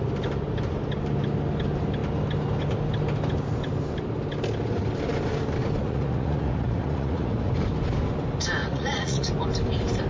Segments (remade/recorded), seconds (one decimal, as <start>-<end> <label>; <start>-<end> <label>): 0.0-5.8 recorded; 5.8-7.5 remade; 7.5-8.6 recorded; 8.6-9.3 remade; 9.3-10.1 recorded